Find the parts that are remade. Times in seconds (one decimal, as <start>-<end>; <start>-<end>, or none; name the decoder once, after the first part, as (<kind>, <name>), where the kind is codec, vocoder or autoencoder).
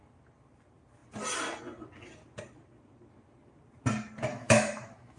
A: 4.3-5.2 (autoencoder, DAC-VAE)